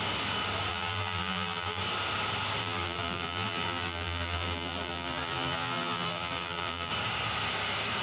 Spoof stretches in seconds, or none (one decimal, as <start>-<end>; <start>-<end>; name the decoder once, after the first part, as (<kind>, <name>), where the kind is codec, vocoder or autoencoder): 0.7-1.8 (vocoder, BigVGAN v2); 2.6-6.9